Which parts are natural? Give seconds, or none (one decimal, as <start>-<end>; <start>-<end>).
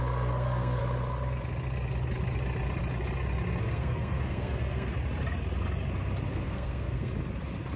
0.8-3.6; 4.9-6.3; 7.1-7.8